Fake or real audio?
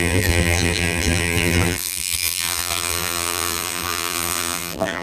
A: fake